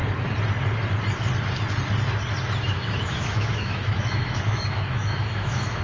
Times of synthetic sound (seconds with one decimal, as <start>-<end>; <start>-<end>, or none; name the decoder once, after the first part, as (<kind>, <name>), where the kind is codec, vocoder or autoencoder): 2.6-5.8 (autoencoder, DAC-VAE)